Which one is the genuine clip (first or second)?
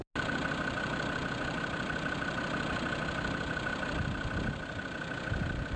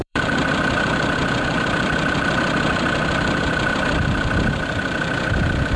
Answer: first